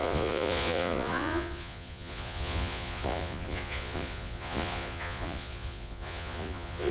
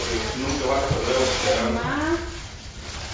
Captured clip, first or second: second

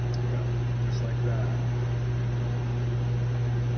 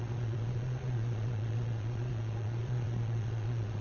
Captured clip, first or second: first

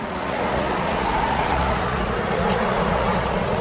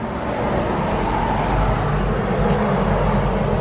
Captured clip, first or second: second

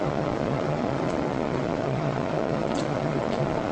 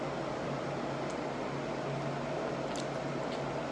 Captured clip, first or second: second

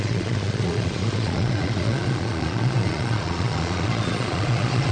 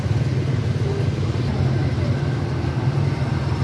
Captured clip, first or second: second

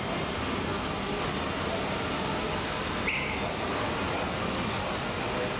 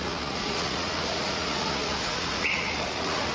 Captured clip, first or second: first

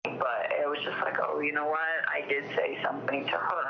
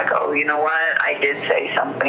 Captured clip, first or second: first